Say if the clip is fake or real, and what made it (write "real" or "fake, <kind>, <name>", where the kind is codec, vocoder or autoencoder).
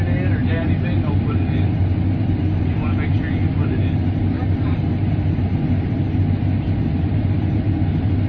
real